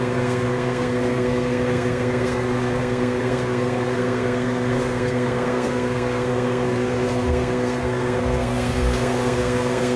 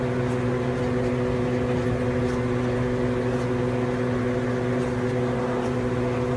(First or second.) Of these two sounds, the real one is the second